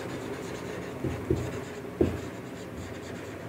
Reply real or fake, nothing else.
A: real